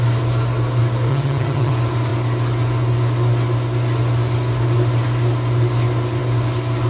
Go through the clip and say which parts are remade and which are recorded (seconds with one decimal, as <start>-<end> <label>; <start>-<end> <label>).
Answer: 0.0-1.1 recorded; 1.1-1.7 remade; 1.7-6.9 recorded